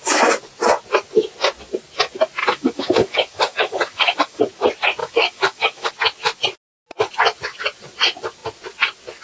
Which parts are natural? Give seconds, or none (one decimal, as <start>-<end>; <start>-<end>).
0.0-2.4; 4.4-5.0; 5.9-9.2